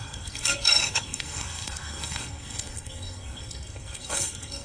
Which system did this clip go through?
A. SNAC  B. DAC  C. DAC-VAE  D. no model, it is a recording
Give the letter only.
A